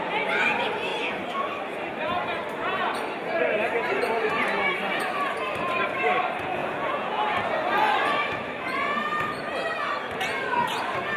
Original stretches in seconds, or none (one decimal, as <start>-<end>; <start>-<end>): 0.0-6.6; 7.2-11.2